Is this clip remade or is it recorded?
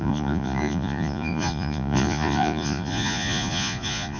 remade